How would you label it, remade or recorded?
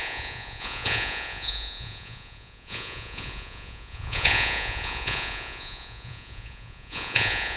remade